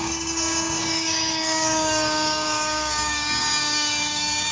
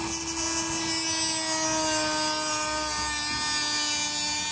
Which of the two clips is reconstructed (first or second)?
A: first